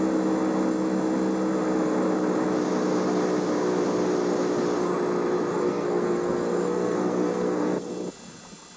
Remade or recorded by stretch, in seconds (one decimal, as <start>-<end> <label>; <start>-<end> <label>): 0.0-5.6 recorded; 5.6-7.9 remade; 7.9-8.8 recorded